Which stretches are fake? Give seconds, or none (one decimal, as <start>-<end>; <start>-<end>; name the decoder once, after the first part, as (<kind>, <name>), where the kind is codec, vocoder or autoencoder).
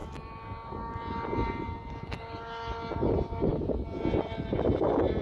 none